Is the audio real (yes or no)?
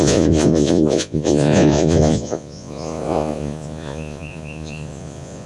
no